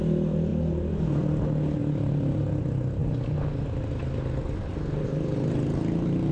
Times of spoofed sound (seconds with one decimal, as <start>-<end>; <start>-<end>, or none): none